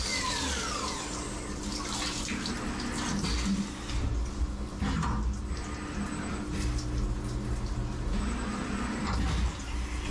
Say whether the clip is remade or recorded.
recorded